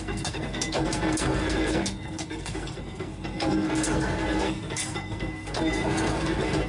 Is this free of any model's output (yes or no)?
no